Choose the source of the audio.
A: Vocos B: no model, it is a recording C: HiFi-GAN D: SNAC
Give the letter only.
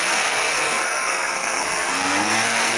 D